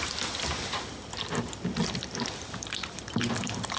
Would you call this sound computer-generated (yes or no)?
yes